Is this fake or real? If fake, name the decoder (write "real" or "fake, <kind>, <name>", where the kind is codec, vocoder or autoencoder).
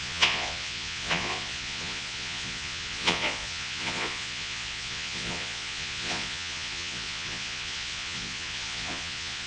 fake, vocoder, Vocos